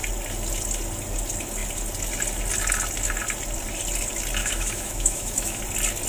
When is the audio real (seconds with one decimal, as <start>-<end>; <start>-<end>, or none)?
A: 0.0-4.4; 5.6-6.1